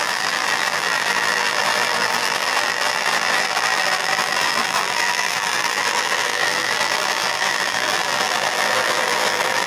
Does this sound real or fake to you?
fake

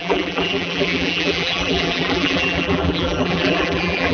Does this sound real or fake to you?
fake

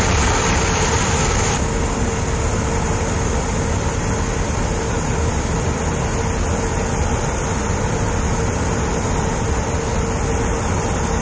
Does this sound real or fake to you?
real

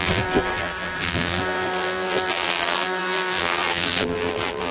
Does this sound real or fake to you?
fake